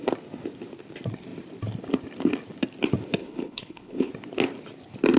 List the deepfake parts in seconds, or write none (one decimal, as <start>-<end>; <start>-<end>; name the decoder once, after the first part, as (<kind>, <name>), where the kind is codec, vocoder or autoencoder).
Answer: 3.2-4.1 (codec, HILCodec)